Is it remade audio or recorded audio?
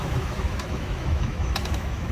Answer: remade